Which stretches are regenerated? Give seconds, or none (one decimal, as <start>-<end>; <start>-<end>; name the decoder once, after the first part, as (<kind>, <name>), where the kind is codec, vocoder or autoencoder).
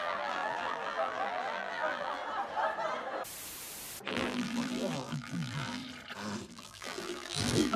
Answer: 0.0-2.2 (vocoder, BigVGAN v2); 4.1-5.8; 6.5-7.8